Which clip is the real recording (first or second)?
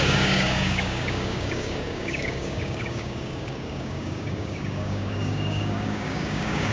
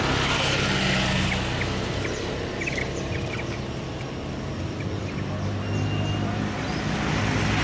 second